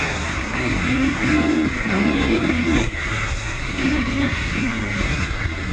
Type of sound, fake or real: fake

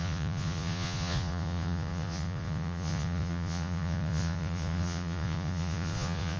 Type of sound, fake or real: fake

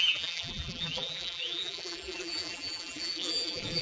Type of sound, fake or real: fake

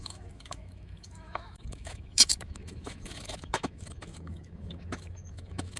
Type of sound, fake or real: fake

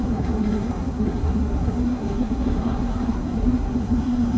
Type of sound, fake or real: fake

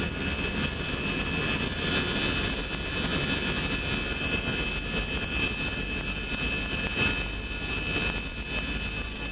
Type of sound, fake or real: real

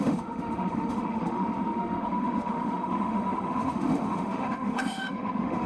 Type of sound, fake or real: fake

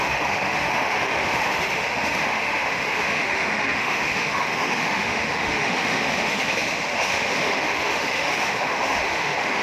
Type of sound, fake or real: fake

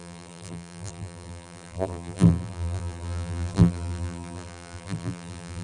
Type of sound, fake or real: fake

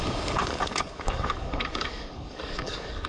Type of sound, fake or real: fake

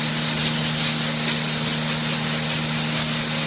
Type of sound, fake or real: real